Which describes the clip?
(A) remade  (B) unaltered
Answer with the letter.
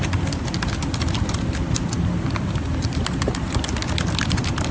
B